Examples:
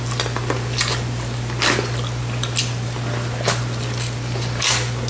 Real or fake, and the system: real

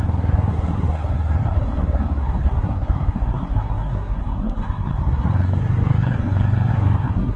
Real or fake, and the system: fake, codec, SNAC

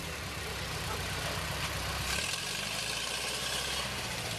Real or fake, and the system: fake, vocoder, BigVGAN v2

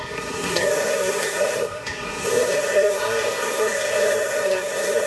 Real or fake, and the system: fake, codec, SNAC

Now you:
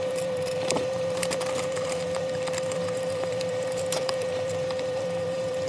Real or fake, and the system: fake, vocoder, BigVGAN v2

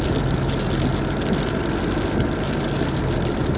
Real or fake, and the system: real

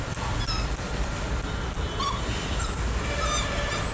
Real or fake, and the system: real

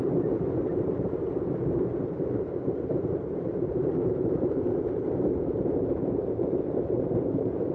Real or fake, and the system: fake, vocoder, BigVGAN v2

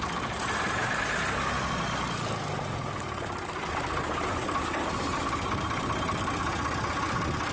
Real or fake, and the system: real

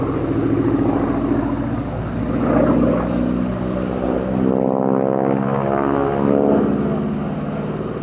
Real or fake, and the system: real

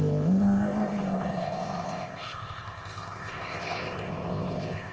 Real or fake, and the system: fake, codec, ZipCodec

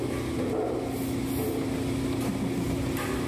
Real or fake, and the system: real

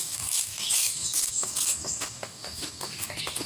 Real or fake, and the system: fake, codec, DAC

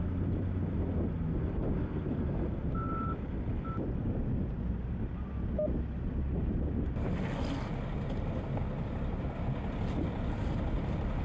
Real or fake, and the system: real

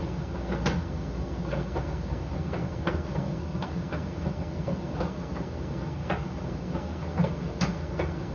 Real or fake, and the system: fake, codec, SNAC